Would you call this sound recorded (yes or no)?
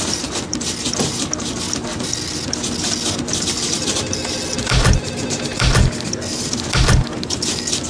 yes